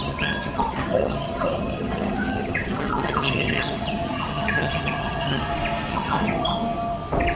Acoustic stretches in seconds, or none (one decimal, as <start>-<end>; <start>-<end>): 5.4-5.9; 6.5-7.4